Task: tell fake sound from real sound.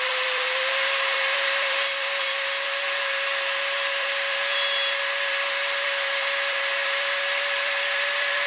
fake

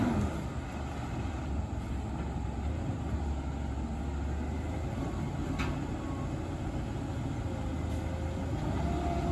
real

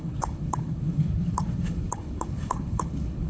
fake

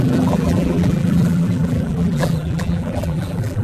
fake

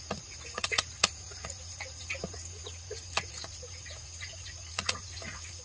fake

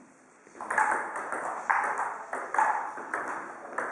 real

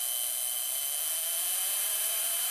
real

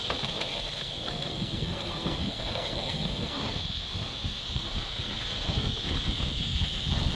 fake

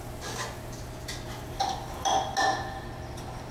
real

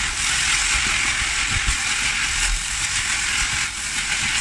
real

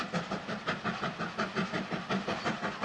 real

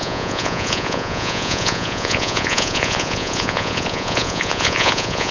fake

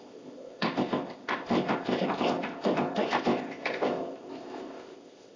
fake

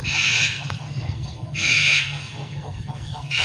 fake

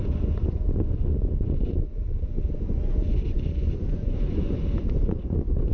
fake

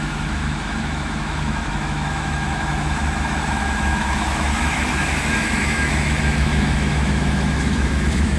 fake